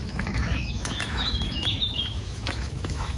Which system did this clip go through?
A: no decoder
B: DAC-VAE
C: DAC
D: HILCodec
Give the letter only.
B